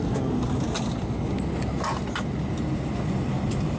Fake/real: real